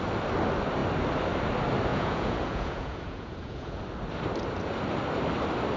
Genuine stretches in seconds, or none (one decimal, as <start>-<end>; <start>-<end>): 0.0-1.9; 3.8-5.8